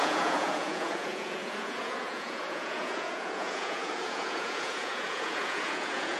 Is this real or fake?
fake